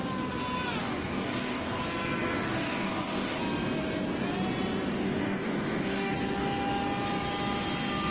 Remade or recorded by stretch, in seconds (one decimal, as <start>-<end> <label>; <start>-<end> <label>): 0.0-0.8 recorded; 0.8-1.8 remade; 1.8-2.5 recorded; 2.5-3.4 remade; 3.4-4.9 recorded; 4.9-6.1 remade; 6.1-8.1 recorded